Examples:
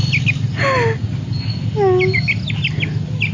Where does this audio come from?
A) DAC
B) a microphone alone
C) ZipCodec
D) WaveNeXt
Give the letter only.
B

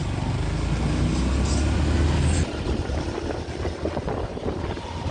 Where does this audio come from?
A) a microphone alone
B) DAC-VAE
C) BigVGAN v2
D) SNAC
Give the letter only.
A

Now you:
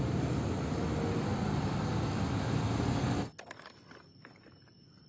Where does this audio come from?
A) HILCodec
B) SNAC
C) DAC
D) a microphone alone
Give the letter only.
D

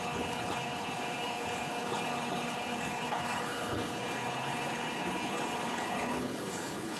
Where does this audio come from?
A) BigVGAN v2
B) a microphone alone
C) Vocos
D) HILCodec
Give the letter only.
D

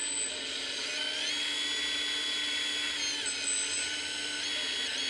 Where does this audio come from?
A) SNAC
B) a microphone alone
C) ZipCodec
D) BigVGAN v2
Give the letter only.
B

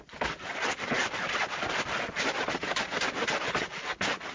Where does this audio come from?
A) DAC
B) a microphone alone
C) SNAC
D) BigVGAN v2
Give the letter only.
B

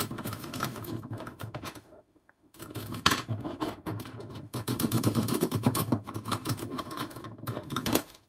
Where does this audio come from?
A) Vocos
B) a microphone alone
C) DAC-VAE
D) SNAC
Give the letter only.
C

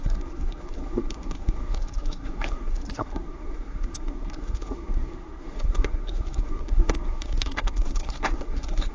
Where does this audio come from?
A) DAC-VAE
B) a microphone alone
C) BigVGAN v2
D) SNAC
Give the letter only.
D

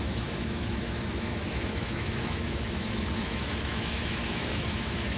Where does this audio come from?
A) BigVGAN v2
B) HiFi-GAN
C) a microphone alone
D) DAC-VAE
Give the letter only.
D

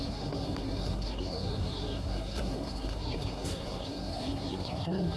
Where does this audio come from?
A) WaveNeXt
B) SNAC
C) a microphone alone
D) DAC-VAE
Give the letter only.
B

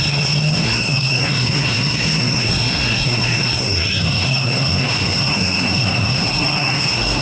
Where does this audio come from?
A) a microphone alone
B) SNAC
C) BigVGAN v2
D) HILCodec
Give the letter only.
B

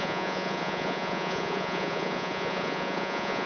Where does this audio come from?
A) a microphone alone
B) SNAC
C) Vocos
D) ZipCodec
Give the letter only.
C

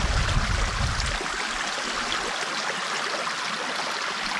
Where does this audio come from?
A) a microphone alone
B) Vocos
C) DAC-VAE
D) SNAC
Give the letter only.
A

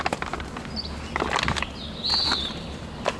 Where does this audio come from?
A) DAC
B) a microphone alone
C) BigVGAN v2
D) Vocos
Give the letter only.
B